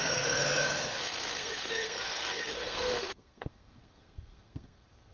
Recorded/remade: remade